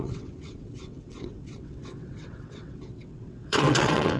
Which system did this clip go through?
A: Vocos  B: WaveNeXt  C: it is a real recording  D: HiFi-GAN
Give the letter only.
B